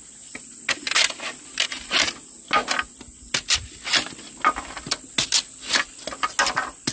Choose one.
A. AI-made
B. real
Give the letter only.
B